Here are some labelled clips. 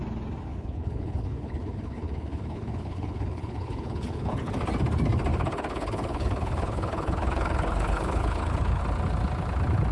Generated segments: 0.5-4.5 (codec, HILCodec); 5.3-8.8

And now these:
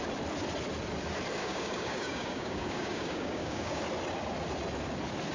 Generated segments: 1.4-3.8 (codec, DAC)

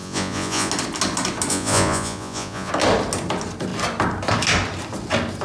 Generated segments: 0.0-0.7 (vocoder, Vocos); 1.5-2.7

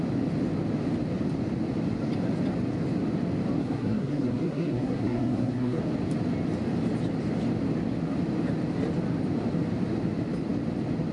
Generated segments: 3.6-5.8 (codec, SNAC)

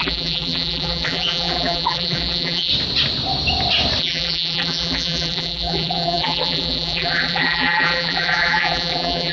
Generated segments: 0.0-2.7 (vocoder, BigVGAN v2); 4.0-9.3